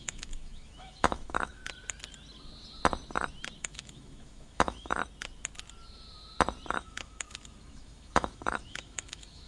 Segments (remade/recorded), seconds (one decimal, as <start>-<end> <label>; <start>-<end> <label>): 0.0-1.6 remade; 1.6-3.6 recorded; 3.6-5.0 remade; 5.0-6.7 recorded; 6.7-9.5 remade